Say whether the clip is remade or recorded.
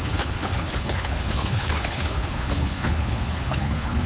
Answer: remade